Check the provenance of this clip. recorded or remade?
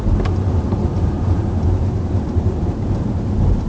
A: recorded